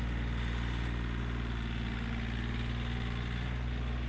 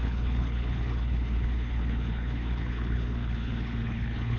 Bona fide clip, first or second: first